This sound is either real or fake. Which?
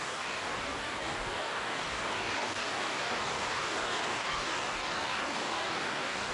fake